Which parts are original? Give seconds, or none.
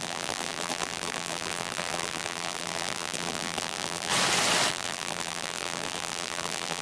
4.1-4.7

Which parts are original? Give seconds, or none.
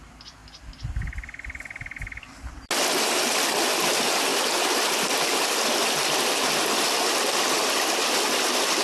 0.0-8.8